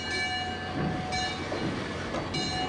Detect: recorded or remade recorded